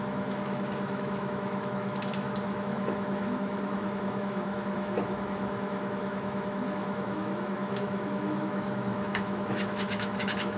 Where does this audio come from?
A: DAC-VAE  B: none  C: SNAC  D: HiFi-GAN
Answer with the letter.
A